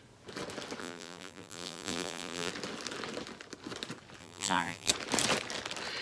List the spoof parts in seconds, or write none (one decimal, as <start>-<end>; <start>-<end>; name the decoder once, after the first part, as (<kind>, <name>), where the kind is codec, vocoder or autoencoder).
0.8-2.5 (vocoder, BigVGAN v2); 4.2-4.9